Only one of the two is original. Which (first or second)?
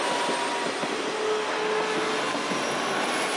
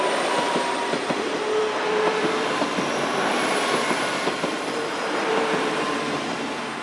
first